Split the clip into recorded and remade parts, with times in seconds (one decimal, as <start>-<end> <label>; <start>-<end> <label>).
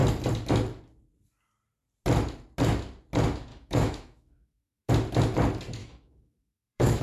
0.0-3.5 recorded; 3.5-4.9 remade; 4.9-5.8 recorded; 5.8-7.0 remade